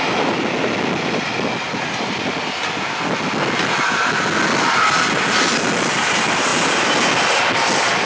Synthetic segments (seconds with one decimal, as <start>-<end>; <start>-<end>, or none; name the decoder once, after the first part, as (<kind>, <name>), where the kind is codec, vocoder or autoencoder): none